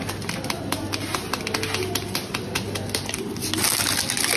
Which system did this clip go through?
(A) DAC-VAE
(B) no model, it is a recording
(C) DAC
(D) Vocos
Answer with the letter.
B